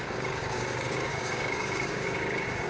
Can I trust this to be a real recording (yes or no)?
no